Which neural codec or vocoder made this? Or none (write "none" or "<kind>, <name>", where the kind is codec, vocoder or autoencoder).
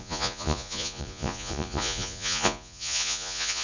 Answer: vocoder, Vocos